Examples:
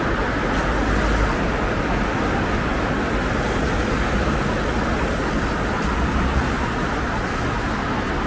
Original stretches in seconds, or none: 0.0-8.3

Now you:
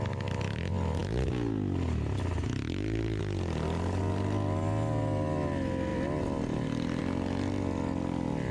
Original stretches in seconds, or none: 0.0-8.5

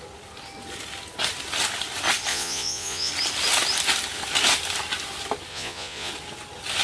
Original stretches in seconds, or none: 0.0-2.3; 3.1-5.5; 6.1-6.8

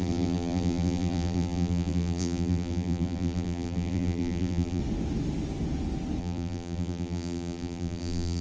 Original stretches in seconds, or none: 4.8-6.2

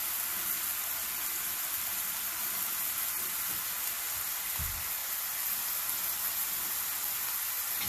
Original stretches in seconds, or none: 0.0-7.9